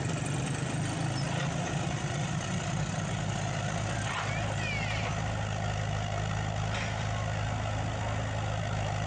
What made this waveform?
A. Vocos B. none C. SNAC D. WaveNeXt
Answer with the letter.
B